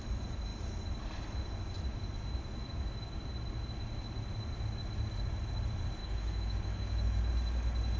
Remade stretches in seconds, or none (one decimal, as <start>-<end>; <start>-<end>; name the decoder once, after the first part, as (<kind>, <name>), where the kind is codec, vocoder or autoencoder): 6.0-7.3 (autoencoder, DAC-VAE)